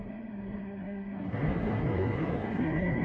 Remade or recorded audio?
remade